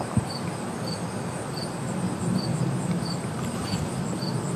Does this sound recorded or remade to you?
recorded